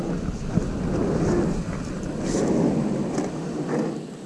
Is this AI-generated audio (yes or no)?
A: no